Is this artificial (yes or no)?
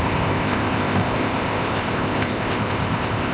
yes